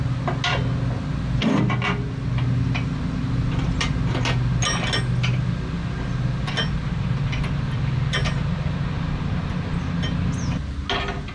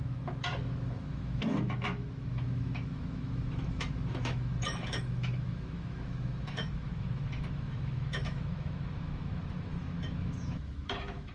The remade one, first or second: second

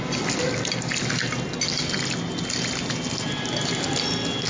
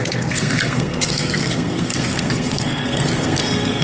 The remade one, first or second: second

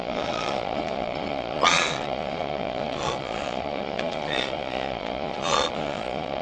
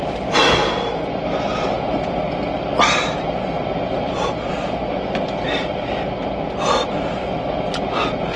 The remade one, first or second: first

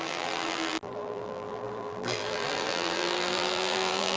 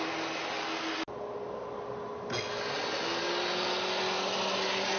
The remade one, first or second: first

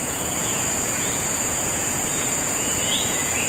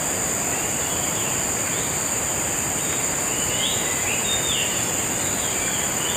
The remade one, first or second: first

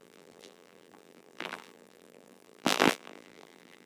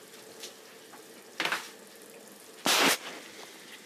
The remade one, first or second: first